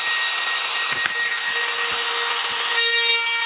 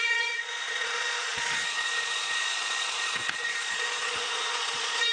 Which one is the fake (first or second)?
second